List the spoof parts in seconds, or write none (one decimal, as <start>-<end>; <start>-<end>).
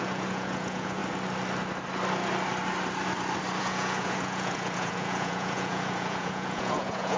0.0-1.0; 3.6-7.2